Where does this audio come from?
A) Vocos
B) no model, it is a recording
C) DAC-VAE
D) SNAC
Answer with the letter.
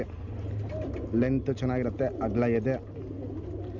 B